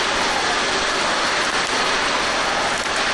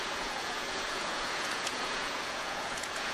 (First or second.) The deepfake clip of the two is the second